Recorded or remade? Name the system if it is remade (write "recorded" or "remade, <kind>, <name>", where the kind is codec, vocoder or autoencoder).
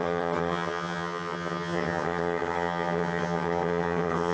remade, vocoder, HiFi-GAN